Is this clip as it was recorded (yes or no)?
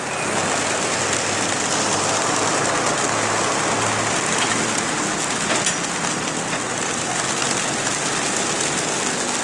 yes